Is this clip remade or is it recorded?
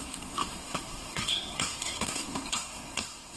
remade